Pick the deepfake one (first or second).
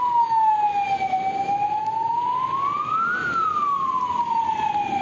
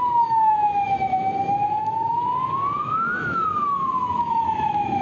second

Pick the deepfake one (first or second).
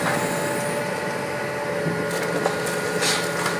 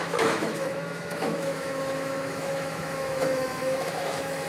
second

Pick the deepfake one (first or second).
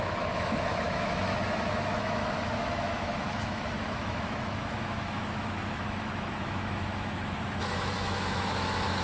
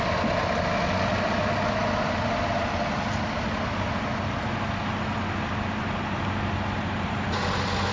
first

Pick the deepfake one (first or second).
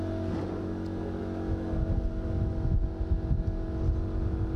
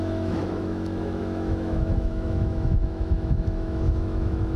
second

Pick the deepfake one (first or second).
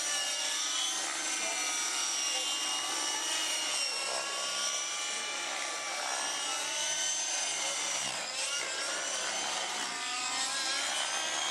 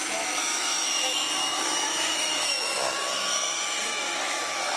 second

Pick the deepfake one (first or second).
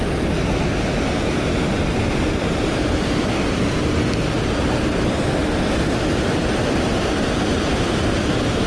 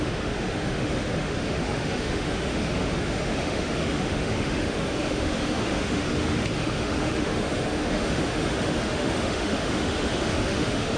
second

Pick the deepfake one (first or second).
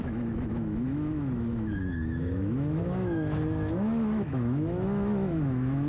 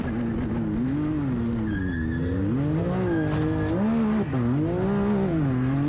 first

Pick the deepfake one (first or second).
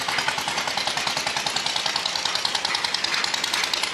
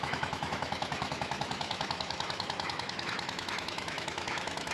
second